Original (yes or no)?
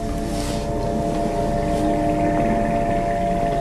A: yes